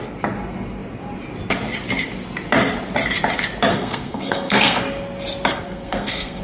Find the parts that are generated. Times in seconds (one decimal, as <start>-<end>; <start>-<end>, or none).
3.7-4.8; 5.5-6.4